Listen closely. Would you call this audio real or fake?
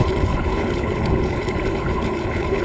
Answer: fake